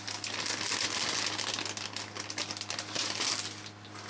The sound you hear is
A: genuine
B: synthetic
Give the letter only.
A